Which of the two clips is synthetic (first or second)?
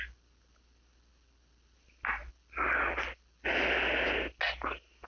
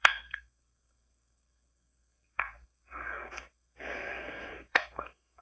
second